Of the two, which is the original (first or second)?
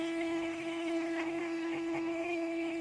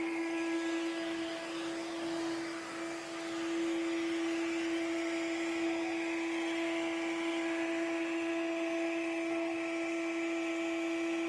second